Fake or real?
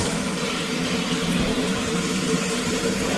fake